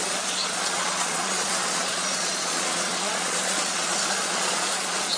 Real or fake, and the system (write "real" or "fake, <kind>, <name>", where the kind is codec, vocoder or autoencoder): fake, vocoder, Vocos